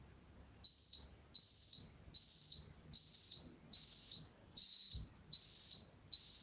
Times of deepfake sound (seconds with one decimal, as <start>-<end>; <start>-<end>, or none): 4.4-4.9